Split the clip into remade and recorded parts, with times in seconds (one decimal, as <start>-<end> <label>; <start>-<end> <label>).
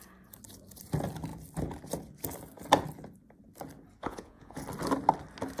0.0-4.0 recorded; 4.0-4.6 remade; 4.6-5.6 recorded